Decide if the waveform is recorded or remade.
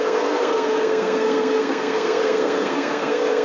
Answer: remade